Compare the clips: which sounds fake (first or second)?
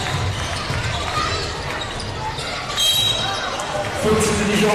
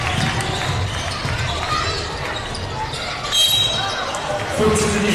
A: first